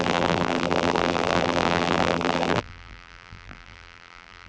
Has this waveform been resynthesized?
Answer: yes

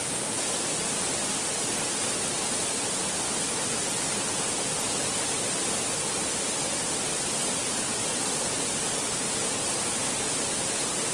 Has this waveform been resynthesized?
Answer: no